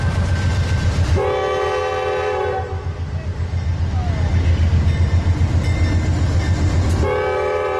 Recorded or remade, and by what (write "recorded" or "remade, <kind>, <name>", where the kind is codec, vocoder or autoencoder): recorded